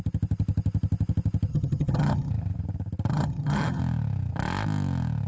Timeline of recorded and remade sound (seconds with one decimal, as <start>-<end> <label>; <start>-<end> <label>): 0.0-1.5 recorded; 1.5-2.3 remade; 2.3-3.1 recorded; 3.1-3.8 remade; 3.8-5.3 recorded